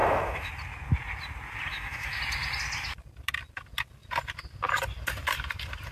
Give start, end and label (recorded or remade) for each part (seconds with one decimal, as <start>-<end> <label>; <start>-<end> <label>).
0.0-0.5 remade; 0.5-1.7 recorded; 1.7-2.2 remade; 2.2-5.9 recorded